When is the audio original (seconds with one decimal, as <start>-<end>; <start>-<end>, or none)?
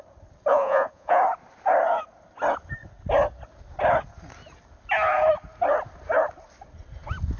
0.0-0.5; 1.2-7.4